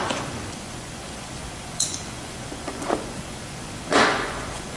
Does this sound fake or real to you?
fake